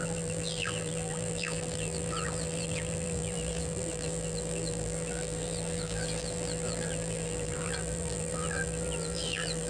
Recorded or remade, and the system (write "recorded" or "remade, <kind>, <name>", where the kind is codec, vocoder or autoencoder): remade, vocoder, BigVGAN v2